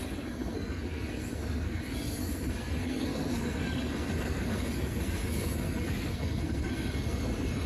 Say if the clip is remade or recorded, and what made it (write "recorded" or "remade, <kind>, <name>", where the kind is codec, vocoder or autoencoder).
remade, codec, SNAC